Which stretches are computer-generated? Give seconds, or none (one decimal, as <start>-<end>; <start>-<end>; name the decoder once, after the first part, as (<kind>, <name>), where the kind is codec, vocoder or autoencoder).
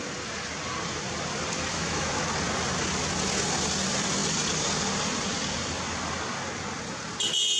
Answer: 1.7-2.2 (autoencoder, DAC-VAE)